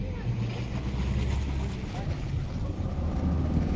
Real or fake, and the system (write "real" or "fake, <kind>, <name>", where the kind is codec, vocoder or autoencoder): real